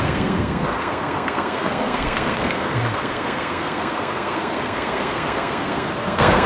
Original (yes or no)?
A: no